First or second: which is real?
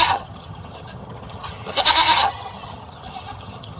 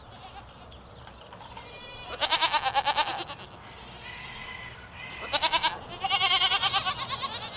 second